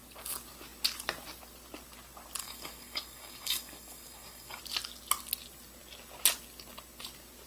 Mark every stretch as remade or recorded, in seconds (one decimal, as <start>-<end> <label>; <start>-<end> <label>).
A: 0.0-2.4 recorded; 2.4-4.6 remade; 4.6-7.5 recorded